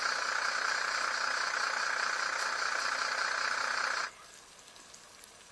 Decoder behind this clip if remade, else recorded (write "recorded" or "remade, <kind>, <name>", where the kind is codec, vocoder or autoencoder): recorded